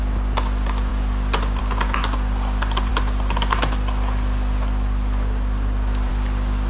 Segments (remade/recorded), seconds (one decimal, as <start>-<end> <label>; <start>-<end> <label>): 0.0-6.7 recorded